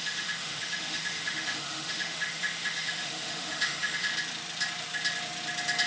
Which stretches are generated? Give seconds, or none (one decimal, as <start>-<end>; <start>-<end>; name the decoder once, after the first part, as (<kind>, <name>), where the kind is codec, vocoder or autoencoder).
0.0-4.1 (autoencoder, DAC-VAE)